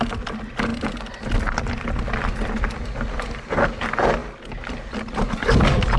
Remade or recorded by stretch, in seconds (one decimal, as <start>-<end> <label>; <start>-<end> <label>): 0.0-6.0 recorded